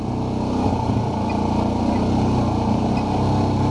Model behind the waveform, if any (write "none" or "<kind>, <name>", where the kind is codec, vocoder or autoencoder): none